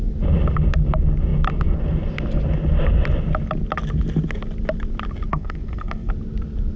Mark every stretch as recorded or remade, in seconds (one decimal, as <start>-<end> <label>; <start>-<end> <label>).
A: 0.0-5.3 recorded; 5.3-6.1 remade; 6.1-6.8 recorded